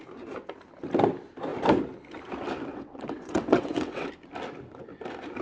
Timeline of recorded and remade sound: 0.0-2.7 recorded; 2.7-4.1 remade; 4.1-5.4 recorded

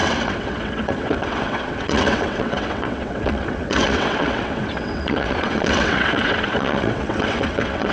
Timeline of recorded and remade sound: 0.0-7.9 remade

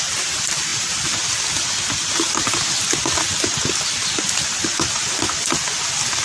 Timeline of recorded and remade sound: 0.0-6.2 recorded

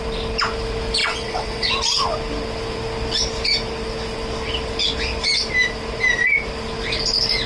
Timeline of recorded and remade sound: 0.0-1.0 recorded; 1.0-1.7 remade; 1.7-7.5 recorded